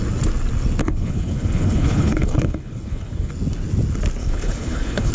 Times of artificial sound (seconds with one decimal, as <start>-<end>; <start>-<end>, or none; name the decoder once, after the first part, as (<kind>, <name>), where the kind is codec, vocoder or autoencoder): 0.8-3.3 (codec, HILCodec); 4.2-5.1

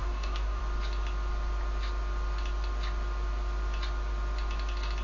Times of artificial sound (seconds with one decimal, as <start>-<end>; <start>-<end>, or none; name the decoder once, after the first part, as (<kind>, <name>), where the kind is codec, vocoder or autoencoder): 0.0-0.6 (codec, DAC)

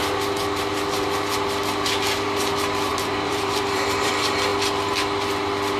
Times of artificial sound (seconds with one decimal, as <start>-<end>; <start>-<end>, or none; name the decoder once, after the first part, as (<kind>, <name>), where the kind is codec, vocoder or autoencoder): 2.9-4.1 (vocoder, BigVGAN v2)